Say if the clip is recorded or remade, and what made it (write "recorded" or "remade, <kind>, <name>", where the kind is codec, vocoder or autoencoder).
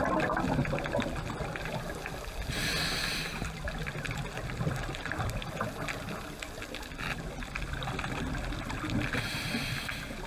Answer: recorded